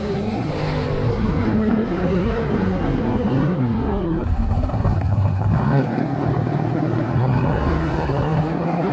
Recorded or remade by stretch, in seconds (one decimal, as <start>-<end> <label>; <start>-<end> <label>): 0.0-0.5 remade; 0.5-1.1 recorded; 1.1-8.9 remade